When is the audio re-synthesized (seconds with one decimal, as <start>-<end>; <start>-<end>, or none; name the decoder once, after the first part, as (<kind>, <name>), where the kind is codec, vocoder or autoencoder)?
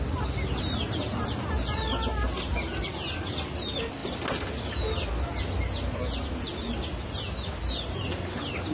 none